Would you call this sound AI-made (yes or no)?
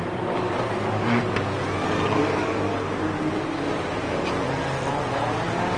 no